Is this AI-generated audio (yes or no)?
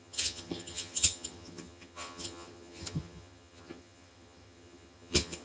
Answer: yes